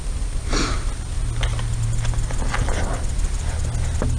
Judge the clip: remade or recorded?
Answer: recorded